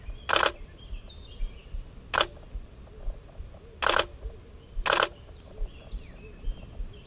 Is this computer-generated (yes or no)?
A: no